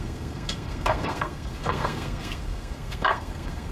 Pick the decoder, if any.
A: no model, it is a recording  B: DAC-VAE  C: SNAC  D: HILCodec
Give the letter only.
C